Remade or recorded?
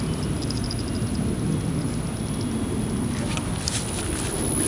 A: recorded